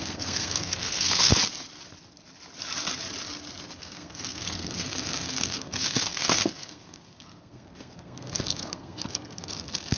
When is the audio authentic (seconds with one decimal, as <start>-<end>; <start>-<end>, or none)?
1.3-3.7